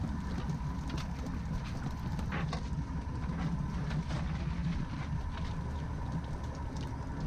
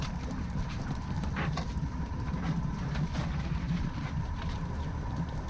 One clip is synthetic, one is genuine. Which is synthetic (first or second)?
second